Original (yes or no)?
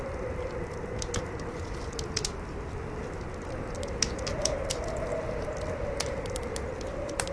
yes